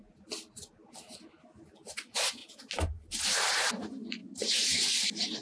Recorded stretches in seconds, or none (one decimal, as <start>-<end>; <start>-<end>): 0.0-5.4